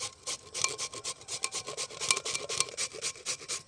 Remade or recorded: recorded